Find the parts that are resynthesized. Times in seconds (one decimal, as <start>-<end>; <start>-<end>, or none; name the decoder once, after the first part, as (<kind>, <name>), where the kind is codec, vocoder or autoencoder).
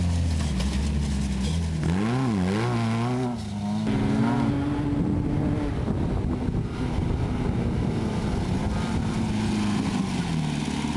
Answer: none